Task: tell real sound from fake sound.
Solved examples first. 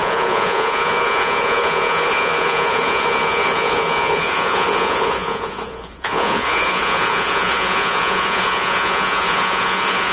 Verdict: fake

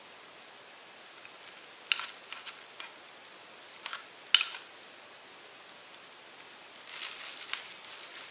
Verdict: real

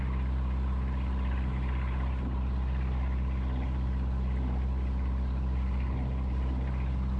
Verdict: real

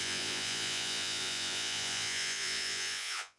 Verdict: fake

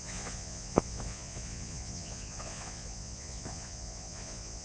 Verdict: fake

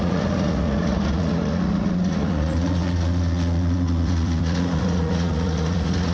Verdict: fake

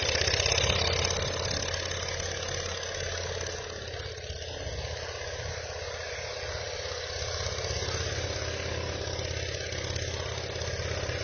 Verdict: real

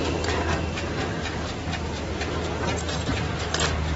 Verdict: real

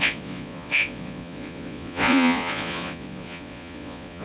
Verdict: fake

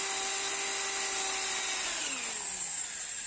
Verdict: real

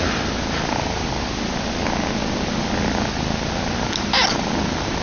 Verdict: real